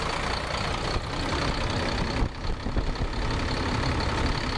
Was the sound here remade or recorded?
recorded